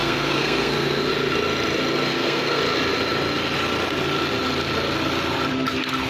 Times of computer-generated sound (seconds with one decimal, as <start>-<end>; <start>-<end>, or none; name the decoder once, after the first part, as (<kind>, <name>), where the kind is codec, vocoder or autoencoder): 0.0-1.1 (codec, SNAC); 2.1-2.6